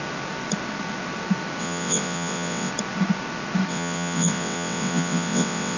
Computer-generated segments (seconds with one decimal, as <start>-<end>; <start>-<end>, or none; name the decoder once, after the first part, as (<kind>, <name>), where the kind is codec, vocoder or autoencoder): 1.6-2.7 (vocoder, WaveNeXt); 3.7-5.8